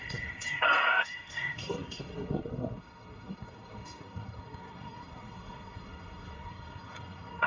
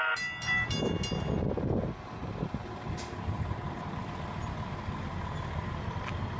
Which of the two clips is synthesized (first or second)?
first